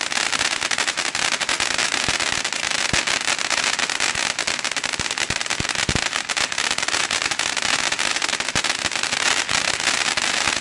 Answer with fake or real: real